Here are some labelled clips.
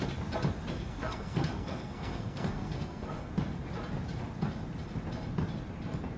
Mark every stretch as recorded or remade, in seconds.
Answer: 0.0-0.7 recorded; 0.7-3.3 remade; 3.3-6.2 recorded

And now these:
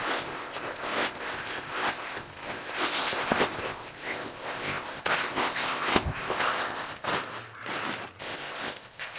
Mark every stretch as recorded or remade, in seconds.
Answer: 0.0-7.1 remade; 7.1-8.2 recorded; 8.2-9.2 remade

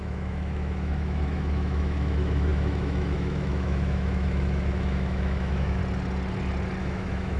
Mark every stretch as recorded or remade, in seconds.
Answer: 0.0-5.8 remade; 5.8-6.8 recorded; 6.8-7.4 remade